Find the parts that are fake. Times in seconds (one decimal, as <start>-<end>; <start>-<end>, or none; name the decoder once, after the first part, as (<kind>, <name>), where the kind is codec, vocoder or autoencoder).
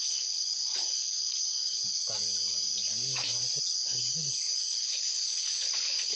0.0-2.0 (codec, HILCodec); 3.6-6.2